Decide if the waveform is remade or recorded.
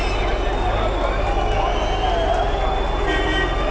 recorded